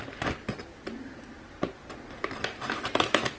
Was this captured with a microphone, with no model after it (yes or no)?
no